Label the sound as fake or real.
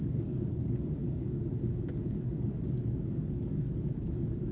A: fake